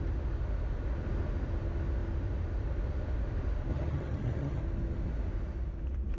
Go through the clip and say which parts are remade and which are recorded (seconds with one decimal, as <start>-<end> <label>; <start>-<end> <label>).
0.0-3.7 recorded; 3.7-4.6 remade; 4.6-6.2 recorded

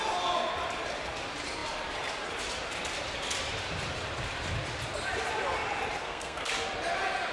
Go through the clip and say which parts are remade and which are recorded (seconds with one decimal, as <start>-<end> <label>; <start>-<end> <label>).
0.0-6.0 recorded; 6.0-6.5 remade; 6.5-7.3 recorded

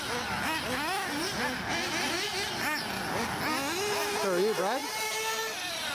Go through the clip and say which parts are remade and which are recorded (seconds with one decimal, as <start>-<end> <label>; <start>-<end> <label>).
0.0-4.8 recorded; 4.8-5.9 remade